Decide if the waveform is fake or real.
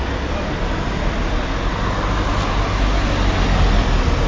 real